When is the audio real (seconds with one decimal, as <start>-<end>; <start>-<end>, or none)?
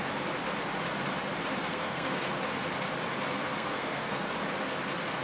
0.0-1.7; 2.3-3.3; 4.3-5.2